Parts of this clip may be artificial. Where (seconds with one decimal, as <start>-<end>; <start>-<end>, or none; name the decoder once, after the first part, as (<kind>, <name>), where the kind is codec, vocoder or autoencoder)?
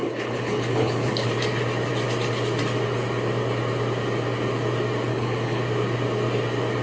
0.0-1.3 (codec, HILCodec); 5.1-5.6